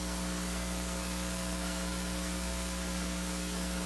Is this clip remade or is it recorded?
remade